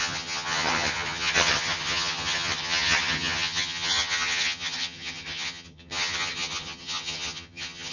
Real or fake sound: fake